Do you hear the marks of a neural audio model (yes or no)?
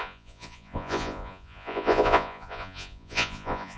yes